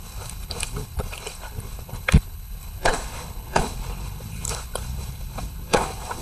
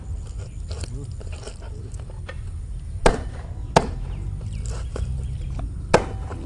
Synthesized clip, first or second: first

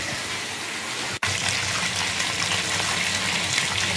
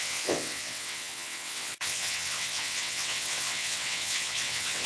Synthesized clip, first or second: second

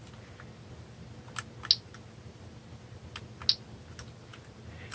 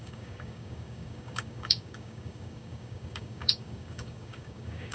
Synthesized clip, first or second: second